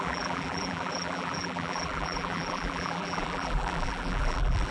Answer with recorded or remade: remade